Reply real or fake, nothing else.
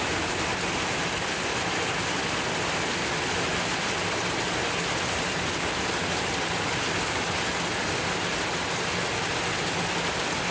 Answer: real